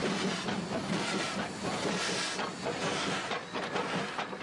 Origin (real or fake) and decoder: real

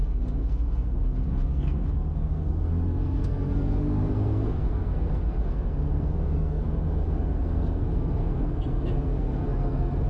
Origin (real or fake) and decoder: fake, codec, SNAC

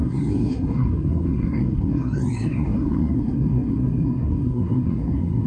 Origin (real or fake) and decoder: fake, codec, SNAC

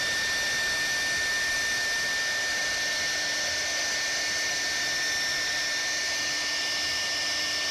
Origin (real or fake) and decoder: real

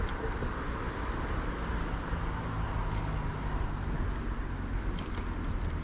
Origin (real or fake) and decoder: real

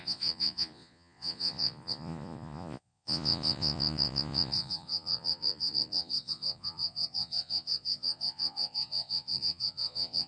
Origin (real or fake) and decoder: fake, vocoder, Vocos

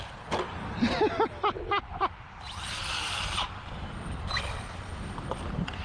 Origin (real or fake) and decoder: real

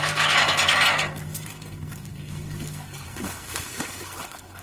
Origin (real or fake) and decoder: fake, codec, SNAC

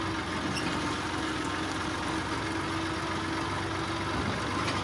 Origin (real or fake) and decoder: real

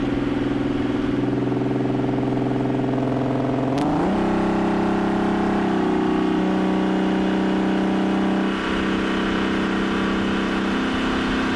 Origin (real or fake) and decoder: real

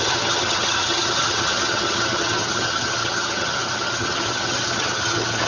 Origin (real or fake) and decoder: fake, vocoder, HiFi-GAN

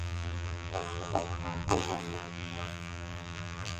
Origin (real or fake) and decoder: fake, vocoder, BigVGAN v2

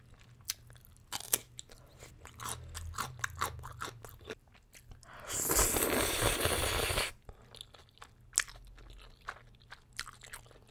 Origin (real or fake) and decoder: real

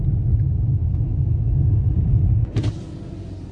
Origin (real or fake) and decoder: real